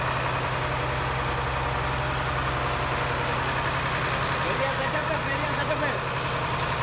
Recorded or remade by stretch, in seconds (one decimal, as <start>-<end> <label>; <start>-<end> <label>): 0.0-6.8 recorded

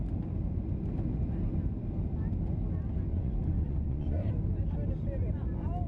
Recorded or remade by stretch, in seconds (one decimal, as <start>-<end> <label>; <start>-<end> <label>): 0.0-3.1 recorded; 3.1-4.3 remade; 4.3-5.9 recorded

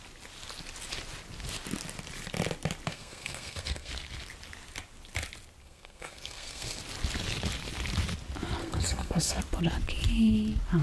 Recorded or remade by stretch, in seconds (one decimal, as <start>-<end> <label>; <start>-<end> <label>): 0.0-2.9 recorded; 2.9-3.9 remade; 3.9-5.6 recorded; 5.6-6.8 remade; 6.8-8.6 recorded; 8.6-9.4 remade; 9.4-10.8 recorded

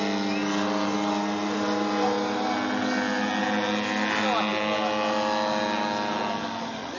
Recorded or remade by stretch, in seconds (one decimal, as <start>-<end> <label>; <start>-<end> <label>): 0.0-7.0 recorded

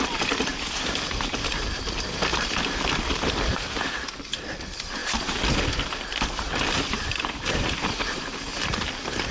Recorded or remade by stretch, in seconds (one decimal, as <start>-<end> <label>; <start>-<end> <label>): 0.0-5.0 remade; 5.0-6.4 recorded; 6.4-9.3 remade

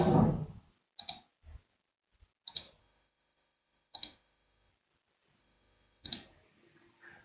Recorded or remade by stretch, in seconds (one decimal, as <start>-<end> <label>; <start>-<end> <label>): 0.0-2.8 recorded; 2.8-4.7 remade; 4.7-5.4 recorded; 5.4-6.1 remade; 6.1-7.2 recorded

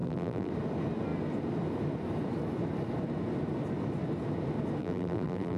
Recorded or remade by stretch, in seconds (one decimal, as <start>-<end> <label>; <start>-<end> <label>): 0.0-0.5 remade; 0.5-4.8 recorded; 4.8-5.6 remade

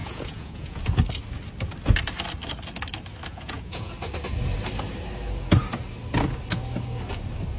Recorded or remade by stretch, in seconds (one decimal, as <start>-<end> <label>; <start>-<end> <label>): 0.0-0.8 remade; 0.8-3.3 recorded; 3.3-3.9 remade; 3.9-7.6 recorded